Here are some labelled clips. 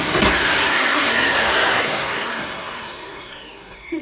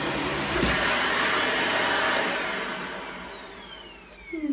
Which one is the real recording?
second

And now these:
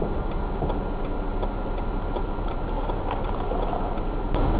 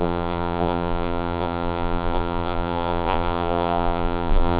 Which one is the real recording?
first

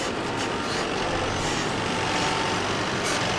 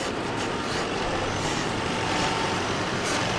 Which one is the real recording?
first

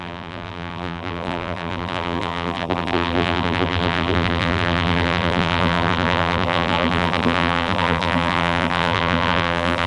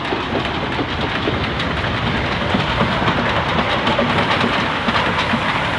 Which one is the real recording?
second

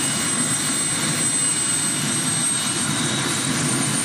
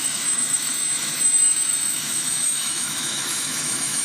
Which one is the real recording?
first